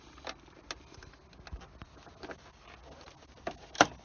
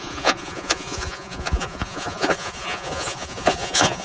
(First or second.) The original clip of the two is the first